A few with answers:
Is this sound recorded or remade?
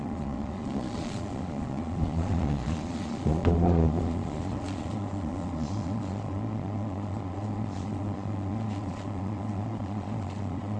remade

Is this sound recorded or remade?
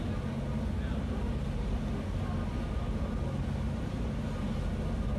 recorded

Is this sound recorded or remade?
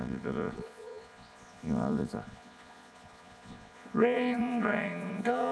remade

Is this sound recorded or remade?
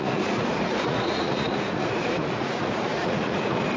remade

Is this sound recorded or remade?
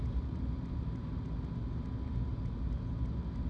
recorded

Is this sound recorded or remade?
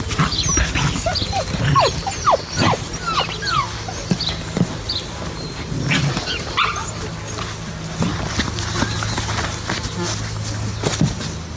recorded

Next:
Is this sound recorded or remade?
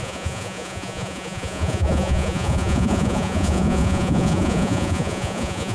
remade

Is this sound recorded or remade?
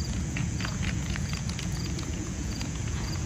remade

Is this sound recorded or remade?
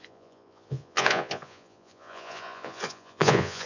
remade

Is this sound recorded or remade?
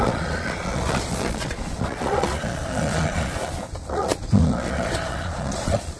remade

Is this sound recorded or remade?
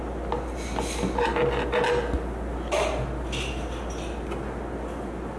recorded